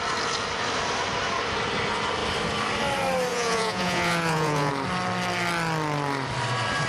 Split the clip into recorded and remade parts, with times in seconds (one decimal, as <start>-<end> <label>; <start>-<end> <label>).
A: 0.0-3.3 recorded; 3.3-4.7 remade; 4.7-6.9 recorded